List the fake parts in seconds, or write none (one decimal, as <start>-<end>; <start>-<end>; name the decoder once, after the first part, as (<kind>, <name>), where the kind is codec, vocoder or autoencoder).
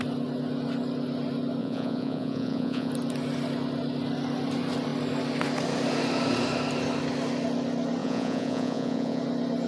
1.6-2.9 (vocoder, Vocos); 8.0-9.2